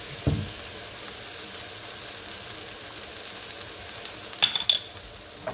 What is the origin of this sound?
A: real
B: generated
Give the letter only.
A